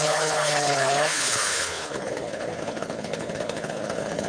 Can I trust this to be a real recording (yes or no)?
no